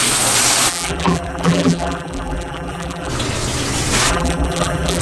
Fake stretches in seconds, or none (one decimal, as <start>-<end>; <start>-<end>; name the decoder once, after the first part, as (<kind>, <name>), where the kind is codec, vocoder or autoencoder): 0.7-3.1 (vocoder, BigVGAN v2); 4.1-5.0